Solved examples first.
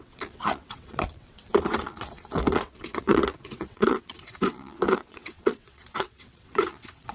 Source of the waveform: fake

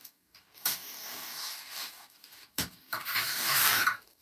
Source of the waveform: fake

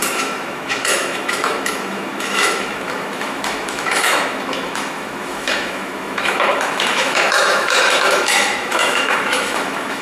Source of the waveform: fake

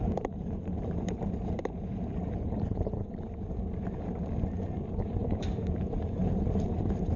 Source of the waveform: fake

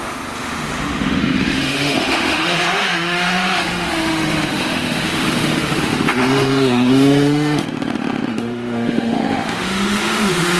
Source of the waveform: fake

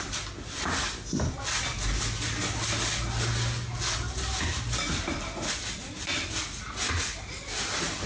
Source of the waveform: real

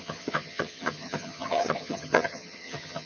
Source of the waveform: fake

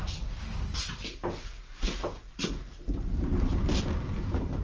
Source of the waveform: fake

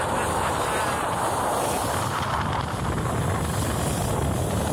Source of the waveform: real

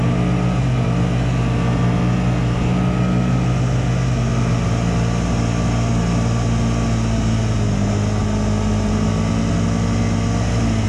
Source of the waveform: real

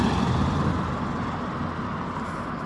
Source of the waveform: real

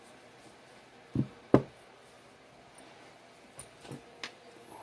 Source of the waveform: real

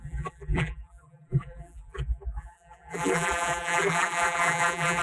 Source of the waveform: fake